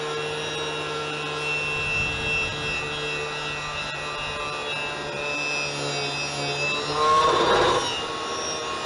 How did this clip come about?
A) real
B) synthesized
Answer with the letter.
A